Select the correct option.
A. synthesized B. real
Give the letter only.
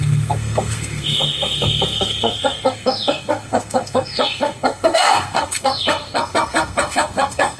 A